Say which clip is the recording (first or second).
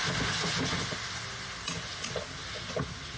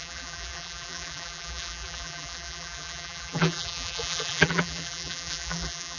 first